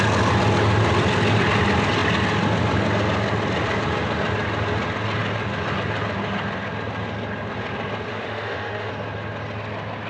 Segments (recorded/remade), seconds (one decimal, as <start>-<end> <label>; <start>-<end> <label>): 0.0-8.1 recorded; 8.1-8.9 remade; 8.9-10.1 recorded